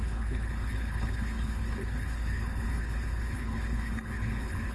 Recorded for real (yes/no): no